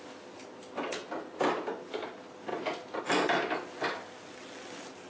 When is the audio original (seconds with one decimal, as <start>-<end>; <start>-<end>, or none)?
0.0-5.1